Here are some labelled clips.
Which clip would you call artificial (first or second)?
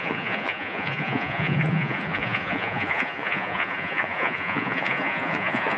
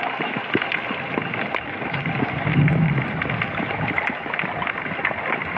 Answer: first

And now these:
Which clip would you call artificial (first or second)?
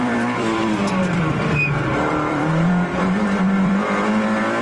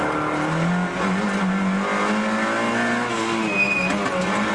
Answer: first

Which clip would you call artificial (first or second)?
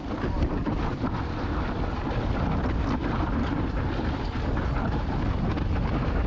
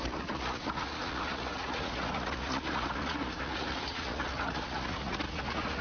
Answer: second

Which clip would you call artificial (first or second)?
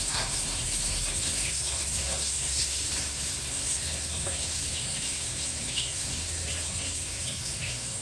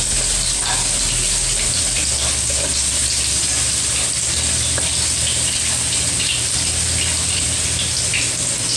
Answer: first